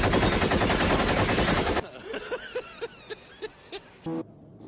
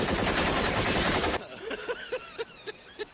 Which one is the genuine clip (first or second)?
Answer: first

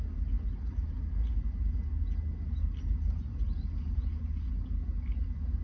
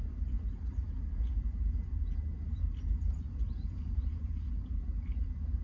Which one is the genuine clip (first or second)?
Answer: first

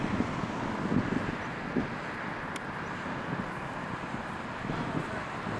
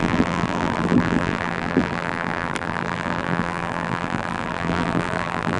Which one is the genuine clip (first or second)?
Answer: first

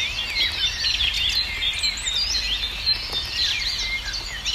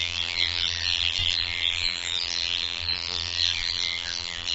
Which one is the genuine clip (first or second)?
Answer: first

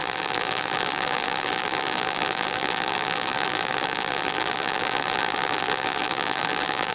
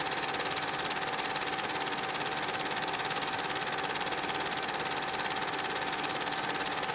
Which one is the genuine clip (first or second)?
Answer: second